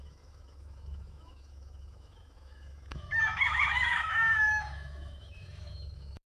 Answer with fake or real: fake